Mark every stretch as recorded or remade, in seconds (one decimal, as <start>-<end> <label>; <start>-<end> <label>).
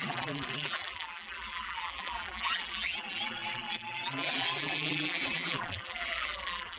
0.0-6.8 remade